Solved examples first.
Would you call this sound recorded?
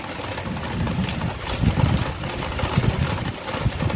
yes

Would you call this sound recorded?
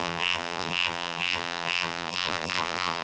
no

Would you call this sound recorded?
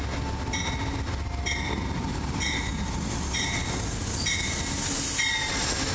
yes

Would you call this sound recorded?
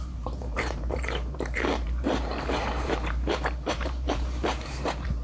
no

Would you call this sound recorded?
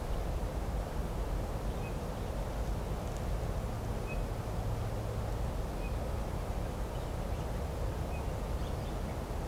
yes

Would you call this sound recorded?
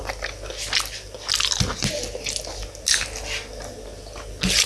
yes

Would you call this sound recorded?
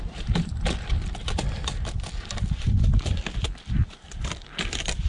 no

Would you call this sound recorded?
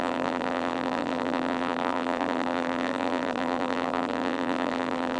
no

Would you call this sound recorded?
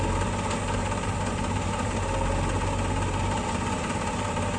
yes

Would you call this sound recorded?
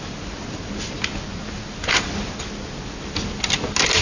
yes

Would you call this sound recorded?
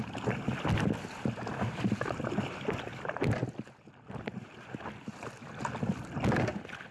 yes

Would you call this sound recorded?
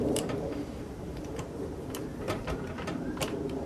no